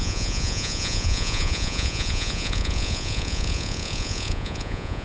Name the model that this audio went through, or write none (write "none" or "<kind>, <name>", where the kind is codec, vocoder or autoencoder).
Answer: vocoder, Vocos